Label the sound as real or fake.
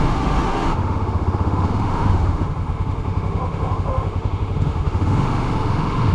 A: fake